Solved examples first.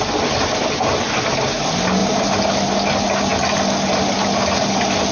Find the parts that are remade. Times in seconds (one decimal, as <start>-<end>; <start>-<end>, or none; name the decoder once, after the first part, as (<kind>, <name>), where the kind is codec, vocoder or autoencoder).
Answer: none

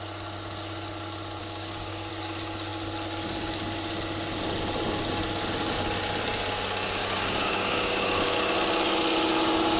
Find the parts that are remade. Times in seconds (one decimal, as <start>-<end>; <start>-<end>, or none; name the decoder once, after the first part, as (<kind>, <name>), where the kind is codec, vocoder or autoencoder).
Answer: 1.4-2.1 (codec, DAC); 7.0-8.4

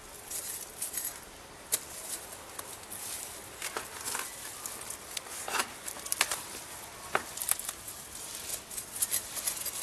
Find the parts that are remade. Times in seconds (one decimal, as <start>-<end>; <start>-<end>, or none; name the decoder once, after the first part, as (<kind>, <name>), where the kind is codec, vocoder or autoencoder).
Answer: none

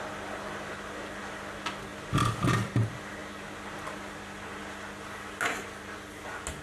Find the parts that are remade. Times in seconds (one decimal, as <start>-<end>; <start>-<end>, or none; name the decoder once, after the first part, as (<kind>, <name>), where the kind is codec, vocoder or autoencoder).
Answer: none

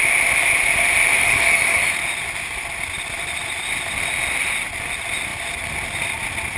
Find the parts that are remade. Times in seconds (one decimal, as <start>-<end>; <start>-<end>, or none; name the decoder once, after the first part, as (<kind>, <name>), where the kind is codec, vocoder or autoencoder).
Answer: 1.2-1.8 (codec, DAC)

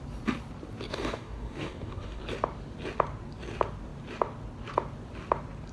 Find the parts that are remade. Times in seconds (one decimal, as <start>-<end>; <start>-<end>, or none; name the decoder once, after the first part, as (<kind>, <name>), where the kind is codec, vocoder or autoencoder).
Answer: 0.9-2.2 (codec, DAC)

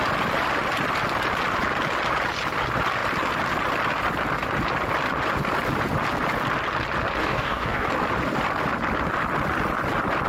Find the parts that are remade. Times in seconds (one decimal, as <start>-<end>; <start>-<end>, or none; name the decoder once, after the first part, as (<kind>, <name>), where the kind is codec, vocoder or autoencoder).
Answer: 7.2-7.9 (codec, DAC)

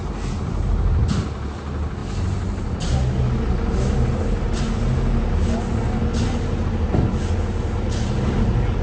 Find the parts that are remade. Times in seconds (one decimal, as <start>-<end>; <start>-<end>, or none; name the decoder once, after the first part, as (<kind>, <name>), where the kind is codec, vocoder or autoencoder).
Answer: none